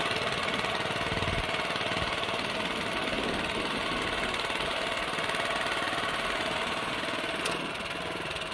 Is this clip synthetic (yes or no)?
no